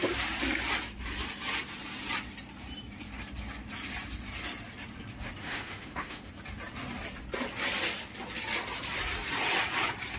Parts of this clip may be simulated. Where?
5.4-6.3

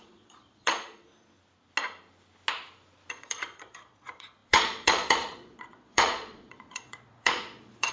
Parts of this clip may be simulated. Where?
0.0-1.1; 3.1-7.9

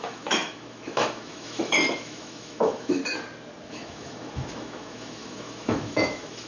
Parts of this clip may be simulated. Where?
0.0-3.0; 3.7-6.5

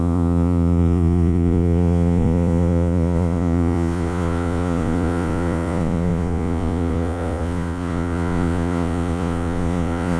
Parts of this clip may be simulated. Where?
0.0-10.2

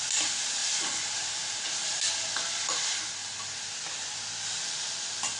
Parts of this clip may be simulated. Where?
0.6-2.1; 3.2-4.1

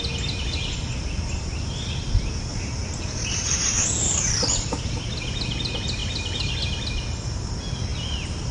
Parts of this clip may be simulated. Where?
2.5-5.0; 6.0-6.5

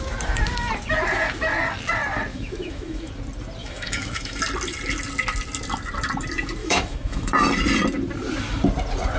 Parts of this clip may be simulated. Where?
2.3-3.1; 3.6-4.4; 6.6-7.3